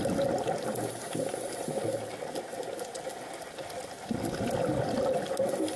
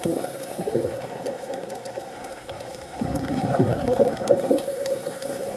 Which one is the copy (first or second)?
second